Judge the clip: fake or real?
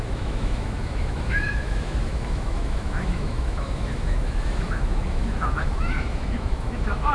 fake